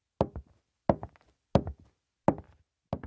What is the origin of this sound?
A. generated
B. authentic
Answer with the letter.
B